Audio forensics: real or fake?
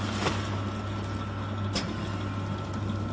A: real